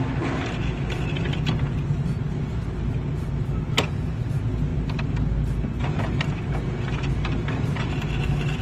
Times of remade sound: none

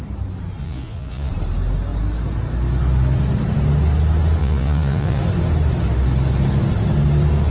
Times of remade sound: 0.6-1.3 (vocoder, Vocos); 4.4-5.2

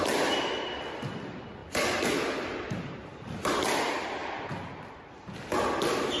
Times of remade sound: none

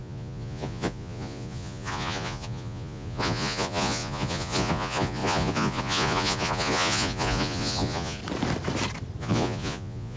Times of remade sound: 0.0-8.2 (vocoder, Vocos); 9.2-10.2

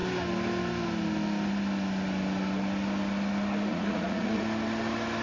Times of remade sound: 3.7-4.4 (vocoder, Vocos)

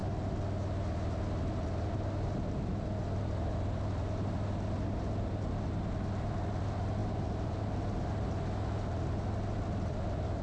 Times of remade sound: none

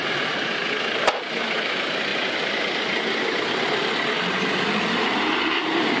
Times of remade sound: none

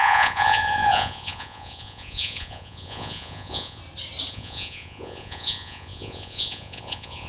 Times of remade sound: 0.0-3.8 (vocoder, Vocos); 4.3-7.3